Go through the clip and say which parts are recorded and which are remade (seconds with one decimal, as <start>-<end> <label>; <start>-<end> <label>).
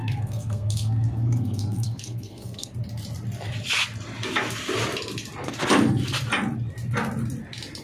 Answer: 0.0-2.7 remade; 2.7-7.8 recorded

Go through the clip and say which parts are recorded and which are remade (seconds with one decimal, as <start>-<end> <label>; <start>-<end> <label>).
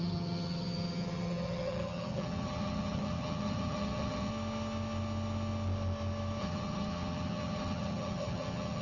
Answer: 0.0-4.3 remade; 4.3-6.4 recorded; 6.4-8.8 remade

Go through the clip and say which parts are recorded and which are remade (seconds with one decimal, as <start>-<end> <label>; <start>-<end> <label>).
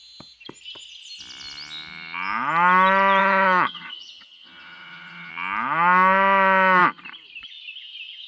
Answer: 0.0-3.2 recorded; 3.2-5.3 remade; 5.3-8.3 recorded